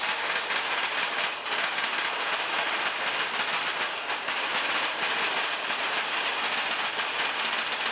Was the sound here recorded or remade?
recorded